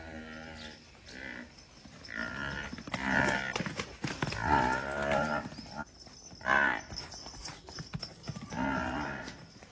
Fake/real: real